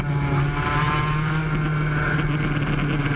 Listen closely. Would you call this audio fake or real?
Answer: real